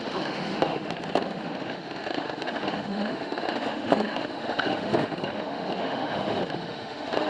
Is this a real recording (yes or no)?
no